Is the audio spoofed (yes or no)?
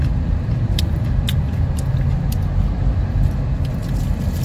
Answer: no